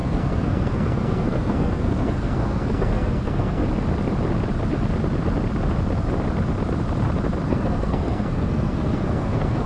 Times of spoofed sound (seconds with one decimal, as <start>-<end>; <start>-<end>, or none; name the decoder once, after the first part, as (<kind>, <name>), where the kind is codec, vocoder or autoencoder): 0.0-3.6 (codec, SNAC); 7.5-9.7